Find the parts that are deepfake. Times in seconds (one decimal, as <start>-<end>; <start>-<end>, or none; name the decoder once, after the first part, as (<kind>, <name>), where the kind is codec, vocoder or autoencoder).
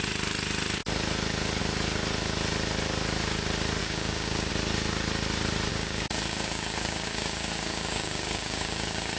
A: 3.8-4.5 (codec, DAC); 5.7-9.2